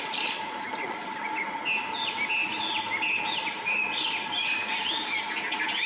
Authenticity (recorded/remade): recorded